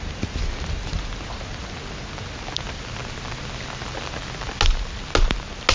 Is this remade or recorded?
recorded